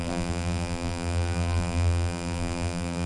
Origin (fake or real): fake